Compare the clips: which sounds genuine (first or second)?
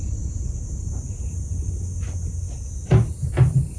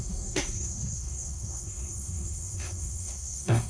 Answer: first